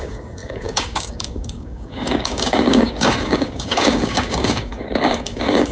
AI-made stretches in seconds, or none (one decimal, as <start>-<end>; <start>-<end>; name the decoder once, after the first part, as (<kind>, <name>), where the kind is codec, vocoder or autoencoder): 0.0-5.7 (codec, DAC)

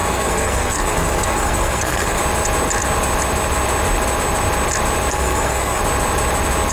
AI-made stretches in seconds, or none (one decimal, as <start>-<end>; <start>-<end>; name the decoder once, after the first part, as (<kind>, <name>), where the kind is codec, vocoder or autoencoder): 0.0-2.2 (codec, SNAC); 5.1-5.8